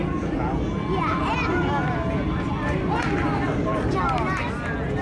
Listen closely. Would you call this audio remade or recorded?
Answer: recorded